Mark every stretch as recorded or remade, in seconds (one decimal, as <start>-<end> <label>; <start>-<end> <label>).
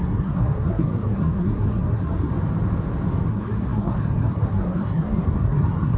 0.0-2.3 remade; 2.3-3.3 recorded; 3.3-6.0 remade